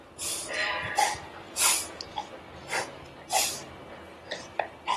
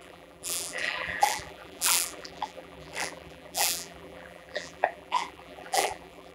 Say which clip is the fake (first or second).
second